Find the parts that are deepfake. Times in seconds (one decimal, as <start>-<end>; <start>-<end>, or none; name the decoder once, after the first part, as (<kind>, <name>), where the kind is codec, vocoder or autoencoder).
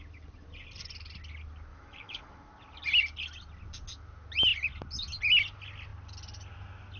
1.7-2.5 (autoencoder, DAC-VAE)